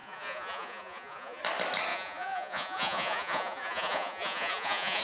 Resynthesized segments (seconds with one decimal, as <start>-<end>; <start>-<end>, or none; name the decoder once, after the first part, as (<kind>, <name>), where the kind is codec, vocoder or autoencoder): 0.0-1.4 (vocoder, Vocos); 1.9-5.0